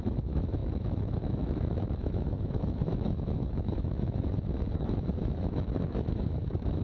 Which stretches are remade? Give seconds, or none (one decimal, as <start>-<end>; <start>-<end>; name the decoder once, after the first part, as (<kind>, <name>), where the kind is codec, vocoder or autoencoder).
0.0-6.8 (autoencoder, DAC-VAE)